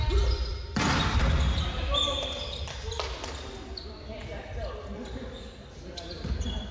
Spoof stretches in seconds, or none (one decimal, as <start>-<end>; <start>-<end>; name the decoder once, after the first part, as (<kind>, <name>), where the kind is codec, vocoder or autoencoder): none